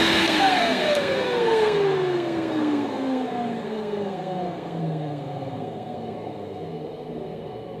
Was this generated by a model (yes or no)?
yes